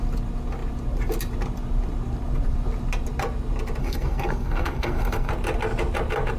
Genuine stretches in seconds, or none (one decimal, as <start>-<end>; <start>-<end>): 0.0-3.8; 5.3-6.4